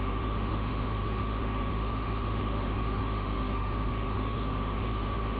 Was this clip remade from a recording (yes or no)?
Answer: yes